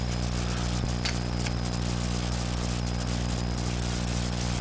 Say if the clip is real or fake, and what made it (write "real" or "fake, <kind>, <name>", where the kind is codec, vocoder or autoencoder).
real